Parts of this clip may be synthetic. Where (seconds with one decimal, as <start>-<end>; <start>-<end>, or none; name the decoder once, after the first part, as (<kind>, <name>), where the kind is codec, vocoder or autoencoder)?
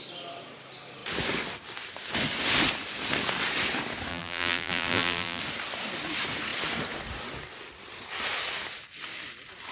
4.1-5.4 (vocoder, BigVGAN v2)